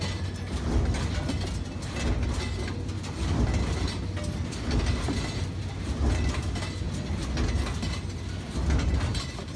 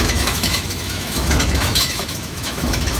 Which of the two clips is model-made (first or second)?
second